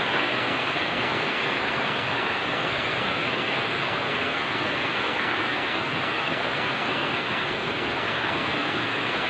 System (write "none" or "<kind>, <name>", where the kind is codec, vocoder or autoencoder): codec, SNAC